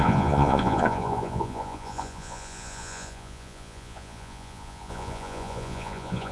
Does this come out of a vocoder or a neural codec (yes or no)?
yes